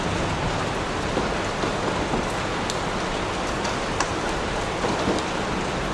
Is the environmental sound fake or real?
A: real